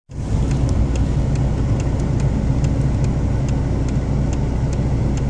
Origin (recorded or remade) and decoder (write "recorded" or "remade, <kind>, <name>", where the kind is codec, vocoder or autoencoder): recorded